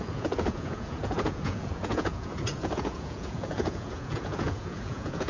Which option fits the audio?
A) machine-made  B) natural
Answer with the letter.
A